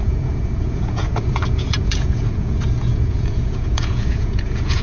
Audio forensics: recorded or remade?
remade